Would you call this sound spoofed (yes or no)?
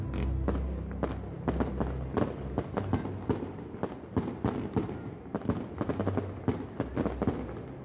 no